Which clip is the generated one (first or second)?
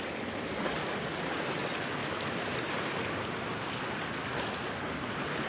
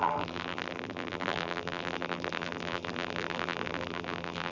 second